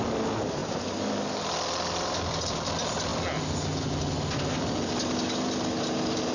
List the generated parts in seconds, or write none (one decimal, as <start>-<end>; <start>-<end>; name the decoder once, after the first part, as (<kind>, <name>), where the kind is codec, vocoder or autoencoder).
none